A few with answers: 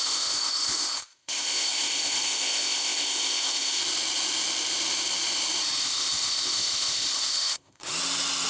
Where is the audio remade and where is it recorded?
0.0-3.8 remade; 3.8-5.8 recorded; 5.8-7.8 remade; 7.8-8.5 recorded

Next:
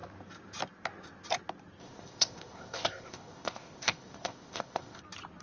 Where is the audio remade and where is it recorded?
0.0-1.8 recorded; 1.8-5.0 remade; 5.0-5.4 recorded

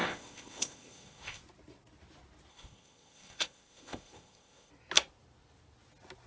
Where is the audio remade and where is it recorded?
0.0-1.4 remade; 1.4-2.5 recorded; 2.5-4.7 remade; 4.7-6.3 recorded

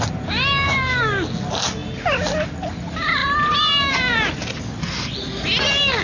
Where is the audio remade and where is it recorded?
0.0-6.0 recorded

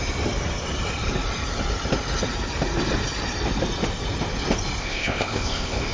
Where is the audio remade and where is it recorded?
0.0-4.8 recorded; 4.8-5.9 remade

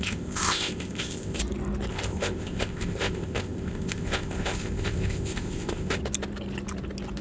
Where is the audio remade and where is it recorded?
0.0-1.4 remade; 1.4-1.9 recorded; 1.9-6.0 remade; 6.0-7.2 recorded